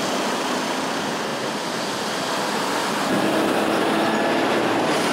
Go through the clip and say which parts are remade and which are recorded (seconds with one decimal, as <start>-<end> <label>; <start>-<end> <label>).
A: 0.0-5.1 recorded